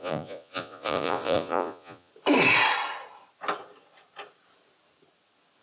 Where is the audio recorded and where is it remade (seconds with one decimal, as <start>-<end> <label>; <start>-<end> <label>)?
0.0-2.1 remade; 2.1-5.6 recorded